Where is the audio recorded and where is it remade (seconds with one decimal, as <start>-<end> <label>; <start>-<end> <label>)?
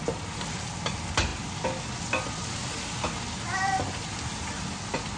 0.0-5.2 recorded